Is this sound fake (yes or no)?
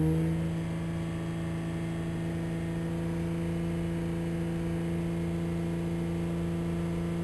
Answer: no